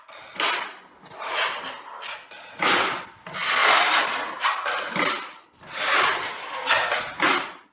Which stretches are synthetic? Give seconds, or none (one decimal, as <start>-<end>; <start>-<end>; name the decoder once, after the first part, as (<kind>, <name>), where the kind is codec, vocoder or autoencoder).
3.6-7.0 (vocoder, BigVGAN v2)